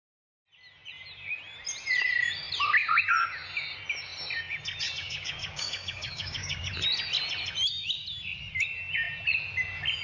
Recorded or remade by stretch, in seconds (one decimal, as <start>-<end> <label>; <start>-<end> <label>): 0.0-5.0 recorded; 5.0-6.7 remade; 6.7-10.0 recorded